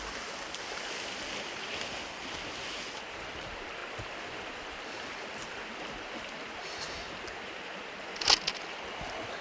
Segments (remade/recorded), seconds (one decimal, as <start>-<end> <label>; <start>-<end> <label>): 0.0-9.4 recorded